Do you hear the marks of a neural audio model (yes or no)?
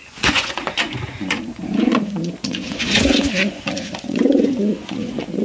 yes